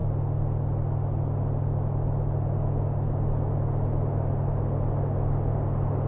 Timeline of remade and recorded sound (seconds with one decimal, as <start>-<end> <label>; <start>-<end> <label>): 0.0-6.1 recorded